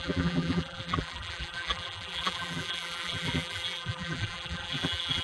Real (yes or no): no